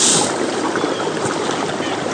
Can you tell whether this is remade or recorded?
recorded